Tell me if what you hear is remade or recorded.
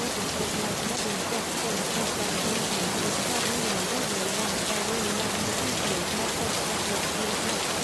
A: recorded